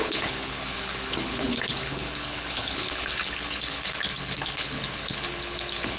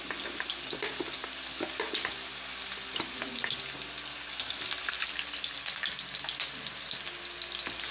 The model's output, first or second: first